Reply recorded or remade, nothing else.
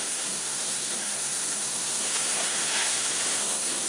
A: remade